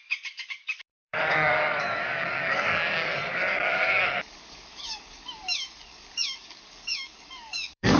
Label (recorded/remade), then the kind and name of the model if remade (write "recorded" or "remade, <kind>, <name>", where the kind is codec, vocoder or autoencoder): remade, codec, DAC